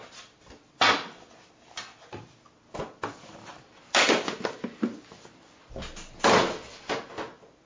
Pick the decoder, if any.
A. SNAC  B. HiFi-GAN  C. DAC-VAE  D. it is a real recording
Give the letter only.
D